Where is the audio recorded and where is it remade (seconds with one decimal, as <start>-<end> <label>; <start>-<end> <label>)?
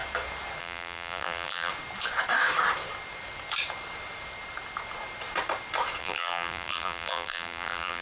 0.0-0.6 recorded; 0.6-1.7 remade; 1.7-6.0 recorded; 6.0-8.0 remade